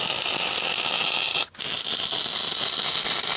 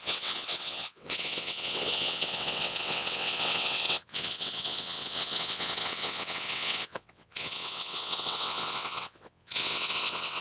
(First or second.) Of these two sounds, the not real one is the second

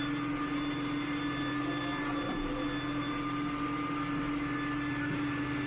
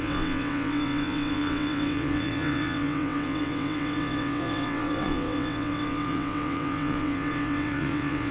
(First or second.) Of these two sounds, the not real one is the second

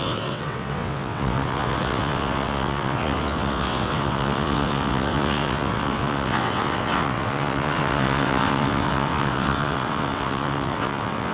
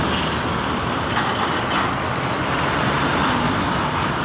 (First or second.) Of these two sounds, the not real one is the first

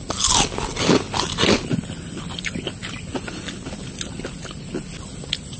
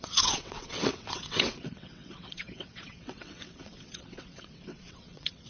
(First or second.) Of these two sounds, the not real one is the second